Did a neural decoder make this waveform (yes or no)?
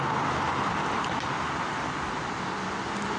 yes